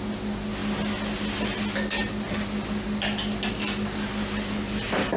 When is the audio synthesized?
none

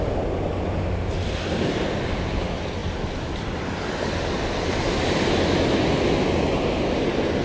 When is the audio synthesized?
none

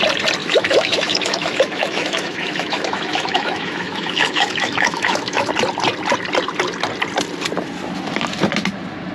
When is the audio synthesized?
0.4-5.5 (autoencoder, DAC-VAE)

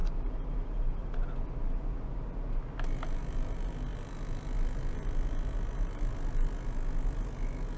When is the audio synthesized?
none